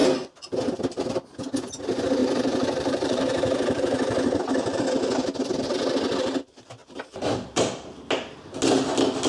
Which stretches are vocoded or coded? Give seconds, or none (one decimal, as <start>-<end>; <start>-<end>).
2.2-4.8; 6.8-7.7